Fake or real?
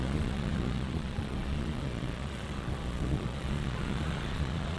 fake